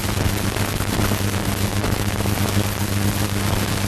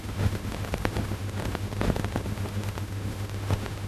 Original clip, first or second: first